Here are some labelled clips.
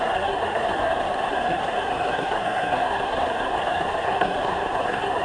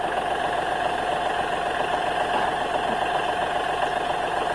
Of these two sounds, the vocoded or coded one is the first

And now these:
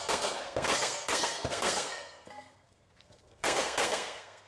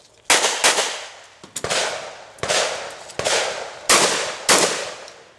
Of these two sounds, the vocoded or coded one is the first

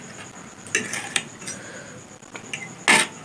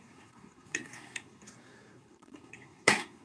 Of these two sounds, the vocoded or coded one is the second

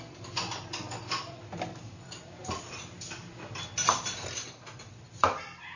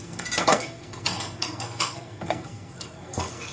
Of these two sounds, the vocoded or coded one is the second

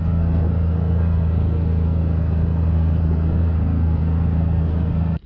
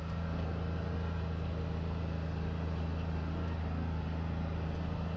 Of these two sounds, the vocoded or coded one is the first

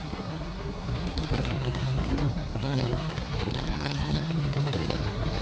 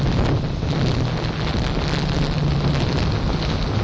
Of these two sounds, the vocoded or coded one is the first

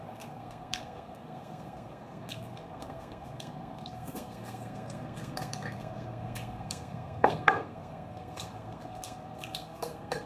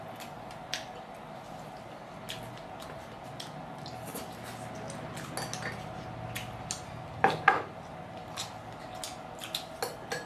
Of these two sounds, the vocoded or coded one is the first